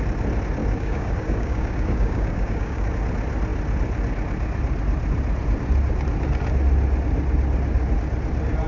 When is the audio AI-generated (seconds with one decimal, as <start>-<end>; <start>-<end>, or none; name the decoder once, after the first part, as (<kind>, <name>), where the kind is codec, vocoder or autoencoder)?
0.6-2.9 (codec, DAC)

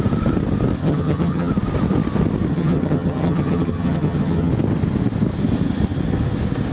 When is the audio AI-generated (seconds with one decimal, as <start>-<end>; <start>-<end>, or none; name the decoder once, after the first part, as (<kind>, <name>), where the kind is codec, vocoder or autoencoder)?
0.8-1.5 (vocoder, HiFi-GAN); 2.5-4.5